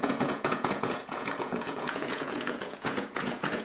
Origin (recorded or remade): remade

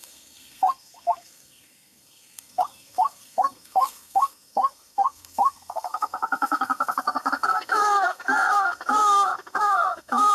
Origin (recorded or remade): remade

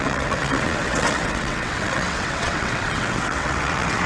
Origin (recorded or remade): remade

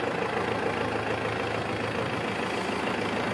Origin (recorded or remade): recorded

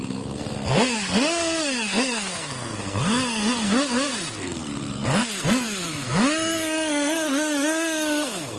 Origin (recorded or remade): remade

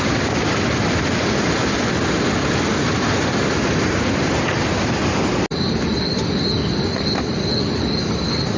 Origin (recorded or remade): recorded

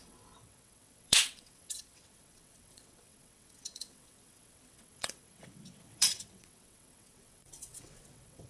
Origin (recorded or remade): remade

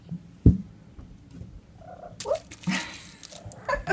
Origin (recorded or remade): recorded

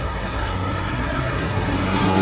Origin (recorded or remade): remade